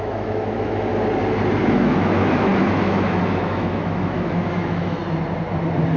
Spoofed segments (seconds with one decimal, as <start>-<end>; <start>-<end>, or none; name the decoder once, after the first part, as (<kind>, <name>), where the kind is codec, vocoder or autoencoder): 0.0-0.9 (autoencoder, DAC-VAE); 1.6-5.0